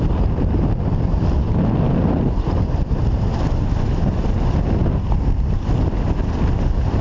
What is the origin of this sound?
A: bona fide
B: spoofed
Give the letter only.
B